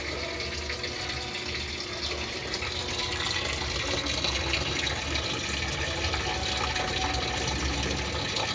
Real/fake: real